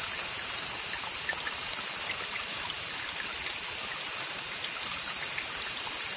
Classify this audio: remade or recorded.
recorded